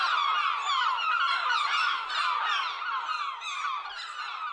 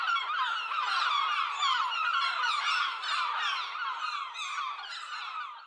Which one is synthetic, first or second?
second